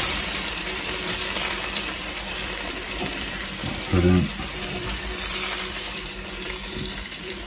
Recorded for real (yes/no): no